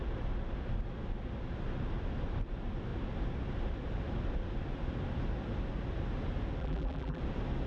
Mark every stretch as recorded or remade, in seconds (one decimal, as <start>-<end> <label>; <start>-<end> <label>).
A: 0.0-6.6 recorded; 6.6-7.2 remade; 7.2-7.7 recorded